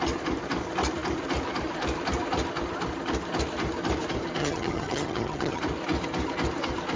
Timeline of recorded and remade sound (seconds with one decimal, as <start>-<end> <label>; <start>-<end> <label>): 0.0-4.4 recorded; 4.4-5.6 remade; 5.6-7.0 recorded